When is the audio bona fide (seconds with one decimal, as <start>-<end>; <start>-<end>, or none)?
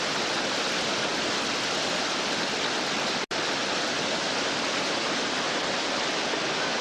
0.0-6.8